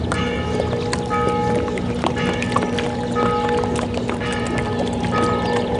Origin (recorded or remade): recorded